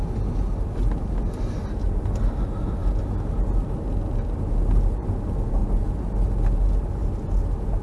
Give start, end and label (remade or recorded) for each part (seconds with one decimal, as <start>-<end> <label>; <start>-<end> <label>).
0.0-7.8 recorded